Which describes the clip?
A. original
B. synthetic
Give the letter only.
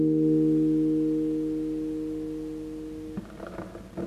A